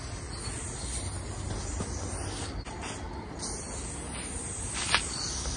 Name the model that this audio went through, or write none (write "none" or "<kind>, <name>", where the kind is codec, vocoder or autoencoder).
none